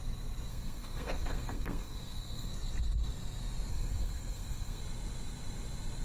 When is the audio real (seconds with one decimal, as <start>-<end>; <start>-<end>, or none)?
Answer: 0.0-0.5; 2.5-3.7; 4.8-6.0